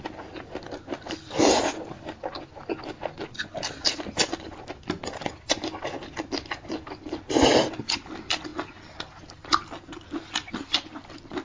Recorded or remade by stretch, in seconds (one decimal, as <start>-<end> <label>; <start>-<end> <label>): 0.0-11.4 recorded